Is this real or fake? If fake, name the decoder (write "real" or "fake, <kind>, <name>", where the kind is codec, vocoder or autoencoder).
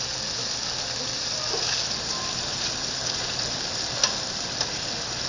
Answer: real